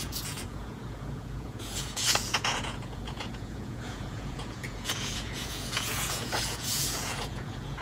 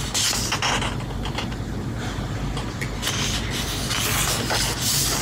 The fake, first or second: first